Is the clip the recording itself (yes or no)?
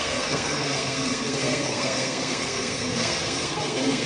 no